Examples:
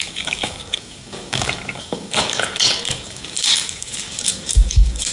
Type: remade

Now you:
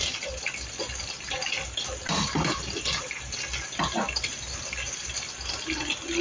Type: recorded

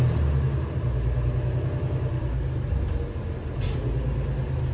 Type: recorded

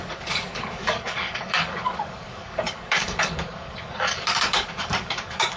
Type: remade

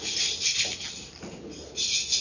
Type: recorded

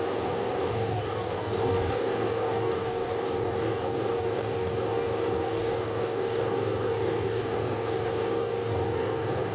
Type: remade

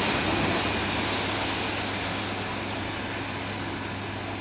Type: recorded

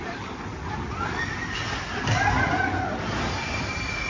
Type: recorded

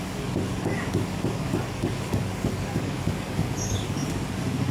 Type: remade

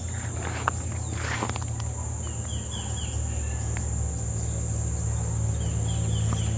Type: recorded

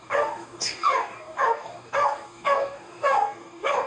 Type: remade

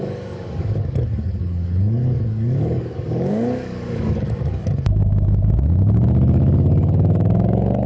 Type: remade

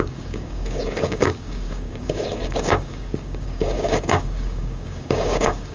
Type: remade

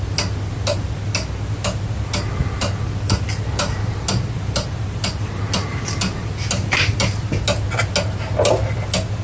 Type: recorded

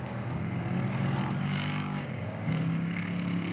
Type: remade